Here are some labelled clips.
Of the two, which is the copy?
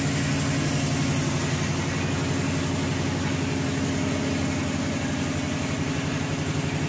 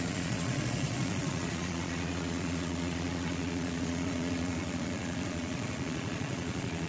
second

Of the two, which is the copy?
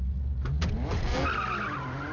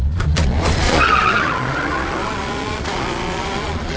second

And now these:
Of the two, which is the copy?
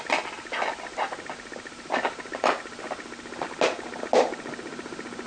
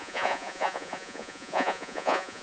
second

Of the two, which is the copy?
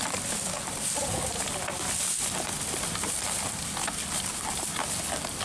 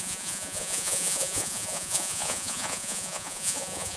second